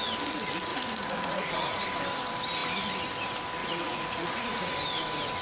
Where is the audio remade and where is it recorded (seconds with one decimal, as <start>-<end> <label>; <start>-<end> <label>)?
0.0-0.7 recorded; 0.7-1.8 remade; 1.8-3.6 recorded; 3.6-4.7 remade; 4.7-5.4 recorded